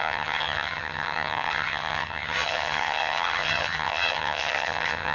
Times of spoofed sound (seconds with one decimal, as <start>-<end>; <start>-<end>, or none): 0.0-5.1